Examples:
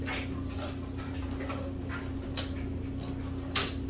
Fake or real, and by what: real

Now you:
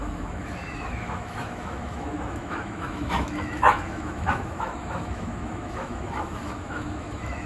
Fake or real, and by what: fake, autoencoder, DAC-VAE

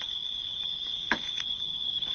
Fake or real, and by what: fake, codec, DAC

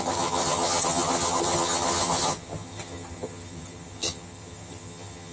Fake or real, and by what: fake, vocoder, HiFi-GAN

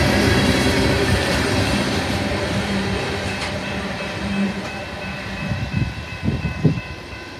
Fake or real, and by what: fake, vocoder, BigVGAN v2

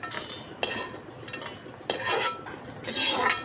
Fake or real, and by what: real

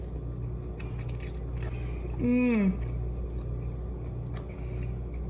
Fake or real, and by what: real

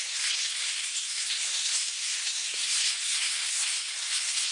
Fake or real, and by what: fake, codec, SNAC